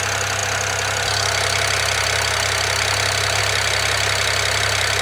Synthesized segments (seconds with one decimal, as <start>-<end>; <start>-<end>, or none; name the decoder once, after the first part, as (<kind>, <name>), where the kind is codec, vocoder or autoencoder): none